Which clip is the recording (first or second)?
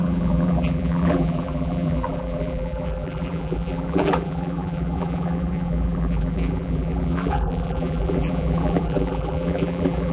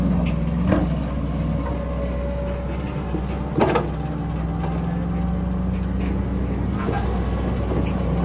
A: second